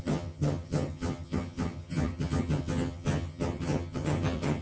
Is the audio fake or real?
fake